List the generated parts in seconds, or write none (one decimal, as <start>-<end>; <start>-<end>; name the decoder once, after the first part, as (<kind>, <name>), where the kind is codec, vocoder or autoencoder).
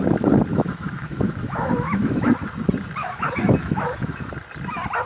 0.5-2.3 (autoencoder, DAC-VAE); 3.0-4.3